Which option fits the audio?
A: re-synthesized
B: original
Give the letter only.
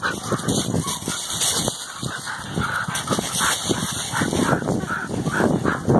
B